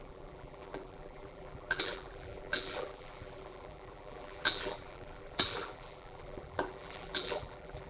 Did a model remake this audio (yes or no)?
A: yes